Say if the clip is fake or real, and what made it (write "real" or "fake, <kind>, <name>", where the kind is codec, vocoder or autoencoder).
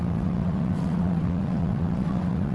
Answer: fake, vocoder, WaveNeXt